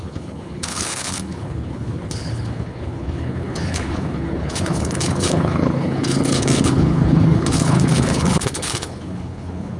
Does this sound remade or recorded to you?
remade